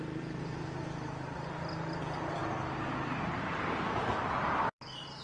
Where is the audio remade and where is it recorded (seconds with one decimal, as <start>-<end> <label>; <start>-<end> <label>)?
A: 0.0-2.4 remade; 2.4-3.3 recorded; 3.3-5.2 remade